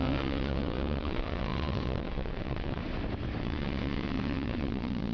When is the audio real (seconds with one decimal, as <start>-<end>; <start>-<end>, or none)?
2.8-3.4